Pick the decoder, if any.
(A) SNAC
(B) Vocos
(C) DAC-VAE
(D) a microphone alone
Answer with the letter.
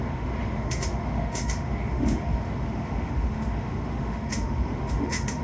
C